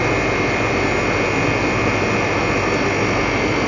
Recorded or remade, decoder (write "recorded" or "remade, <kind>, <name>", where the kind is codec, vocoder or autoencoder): recorded